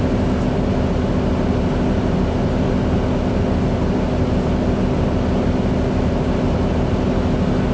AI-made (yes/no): no